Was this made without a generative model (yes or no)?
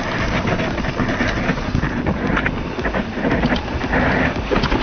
yes